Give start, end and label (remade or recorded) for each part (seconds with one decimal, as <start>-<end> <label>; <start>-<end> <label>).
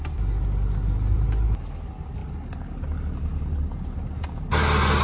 0.0-5.0 recorded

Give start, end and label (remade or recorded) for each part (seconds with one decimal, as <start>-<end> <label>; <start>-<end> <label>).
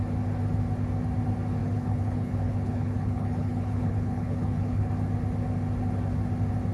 0.0-1.6 recorded; 1.6-4.9 remade; 4.9-6.7 recorded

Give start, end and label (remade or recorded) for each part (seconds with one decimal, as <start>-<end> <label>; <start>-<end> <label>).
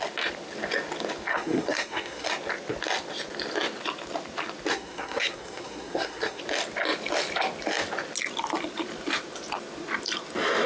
0.0-1.3 recorded; 1.3-2.3 remade; 2.3-4.7 recorded; 4.7-6.4 remade; 6.4-10.7 recorded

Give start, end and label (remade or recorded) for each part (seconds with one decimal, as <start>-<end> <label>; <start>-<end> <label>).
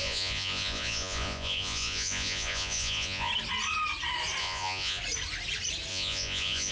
0.0-3.3 remade; 3.3-4.4 recorded; 4.4-5.0 remade; 5.0-5.9 recorded; 5.9-6.7 remade